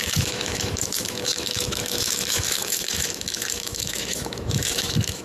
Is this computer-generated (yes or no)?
yes